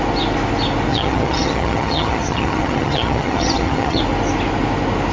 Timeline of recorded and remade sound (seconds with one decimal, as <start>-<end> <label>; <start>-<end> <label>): 0.0-0.9 recorded; 0.9-4.0 remade; 4.0-5.1 recorded